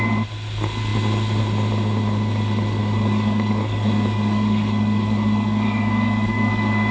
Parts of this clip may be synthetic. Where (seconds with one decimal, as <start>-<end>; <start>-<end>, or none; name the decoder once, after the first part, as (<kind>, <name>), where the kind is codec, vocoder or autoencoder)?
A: 2.8-6.9 (codec, DAC)